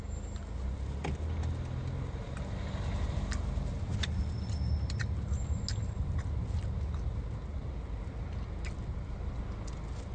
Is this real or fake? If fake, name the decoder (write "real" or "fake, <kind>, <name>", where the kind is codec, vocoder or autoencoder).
real